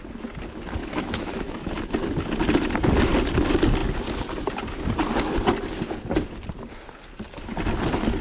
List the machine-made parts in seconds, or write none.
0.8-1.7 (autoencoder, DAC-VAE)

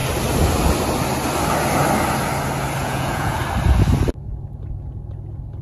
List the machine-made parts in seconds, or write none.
2.8-3.4 (vocoder, Vocos)